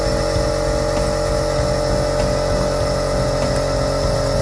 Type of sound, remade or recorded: recorded